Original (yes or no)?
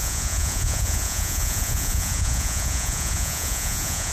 no